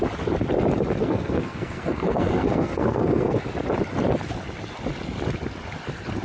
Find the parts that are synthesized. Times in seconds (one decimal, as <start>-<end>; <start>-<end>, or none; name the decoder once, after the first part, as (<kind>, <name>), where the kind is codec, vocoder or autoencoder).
1.0-3.4 (codec, SNAC)